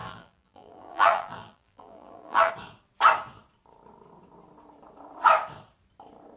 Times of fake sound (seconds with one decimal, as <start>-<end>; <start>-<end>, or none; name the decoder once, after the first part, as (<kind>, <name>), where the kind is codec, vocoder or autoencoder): 0.0-2.5 (vocoder, BigVGAN v2)